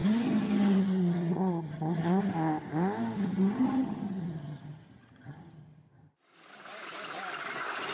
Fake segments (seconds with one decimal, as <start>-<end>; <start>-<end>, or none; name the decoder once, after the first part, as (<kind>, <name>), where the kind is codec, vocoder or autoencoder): 0.0-2.2 (vocoder, HiFi-GAN); 3.3-6.1